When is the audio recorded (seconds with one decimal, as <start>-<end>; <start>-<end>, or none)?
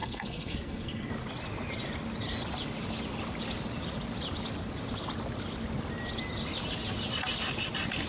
1.1-8.1